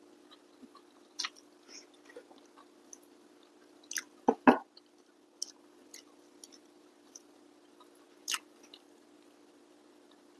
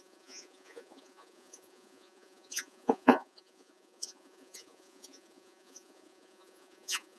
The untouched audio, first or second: first